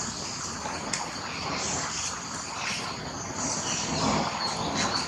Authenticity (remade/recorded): recorded